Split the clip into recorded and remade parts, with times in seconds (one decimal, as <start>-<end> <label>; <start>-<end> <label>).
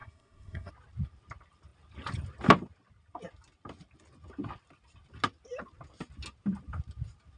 0.0-0.7 remade; 0.7-7.4 recorded